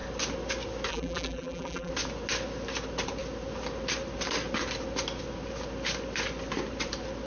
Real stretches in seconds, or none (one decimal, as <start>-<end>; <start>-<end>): 0.0-0.9; 1.9-7.3